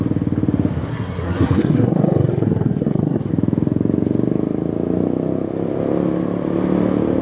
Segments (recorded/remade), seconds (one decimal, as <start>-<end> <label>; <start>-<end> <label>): 0.0-0.9 recorded; 0.9-3.3 remade; 3.3-7.2 recorded